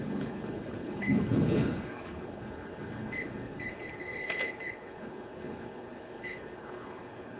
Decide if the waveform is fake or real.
fake